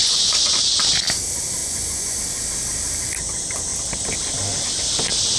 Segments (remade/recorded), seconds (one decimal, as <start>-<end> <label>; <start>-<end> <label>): 0.0-0.6 remade; 0.6-1.6 recorded; 1.6-2.2 remade; 2.2-5.4 recorded